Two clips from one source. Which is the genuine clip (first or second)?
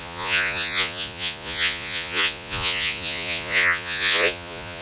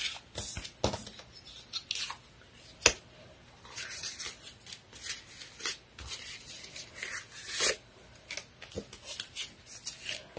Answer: second